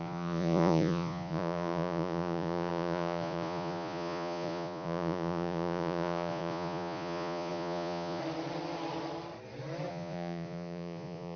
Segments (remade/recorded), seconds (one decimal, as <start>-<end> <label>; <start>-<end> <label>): 0.0-8.2 remade; 8.2-9.9 recorded; 9.9-11.4 remade